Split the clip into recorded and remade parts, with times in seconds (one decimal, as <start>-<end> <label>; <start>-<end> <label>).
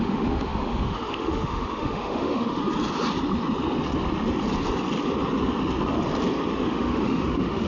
0.0-2.6 remade; 2.6-6.5 recorded; 6.5-7.7 remade